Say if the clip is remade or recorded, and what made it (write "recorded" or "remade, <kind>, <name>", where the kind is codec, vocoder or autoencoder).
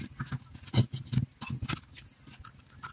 recorded